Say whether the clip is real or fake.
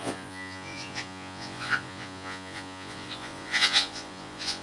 fake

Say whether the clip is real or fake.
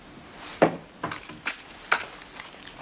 real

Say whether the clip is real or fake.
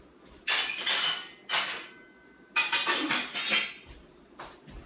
real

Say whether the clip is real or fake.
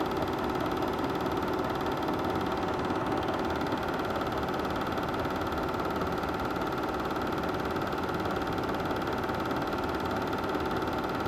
real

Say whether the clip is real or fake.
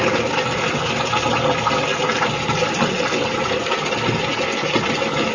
real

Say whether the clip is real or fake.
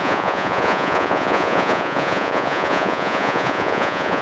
fake